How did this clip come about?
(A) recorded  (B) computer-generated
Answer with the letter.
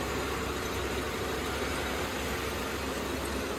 A